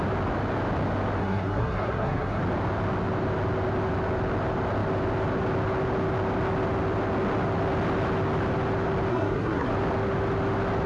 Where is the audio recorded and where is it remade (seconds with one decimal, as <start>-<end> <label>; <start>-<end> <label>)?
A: 0.0-1.2 recorded; 1.2-2.4 remade; 2.4-9.1 recorded; 9.1-9.7 remade; 9.7-10.9 recorded